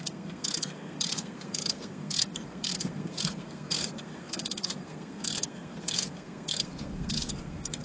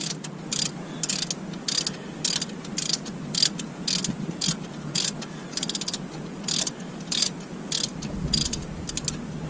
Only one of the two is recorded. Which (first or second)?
second